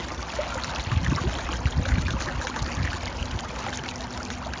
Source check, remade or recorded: recorded